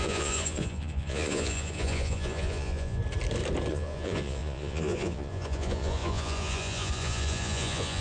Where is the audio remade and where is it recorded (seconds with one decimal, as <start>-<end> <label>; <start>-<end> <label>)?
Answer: 0.0-3.0 remade; 3.0-3.7 recorded; 3.7-8.0 remade